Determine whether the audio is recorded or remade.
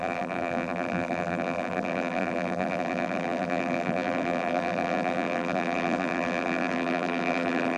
remade